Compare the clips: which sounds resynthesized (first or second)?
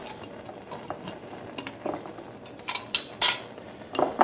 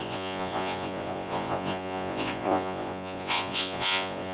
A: second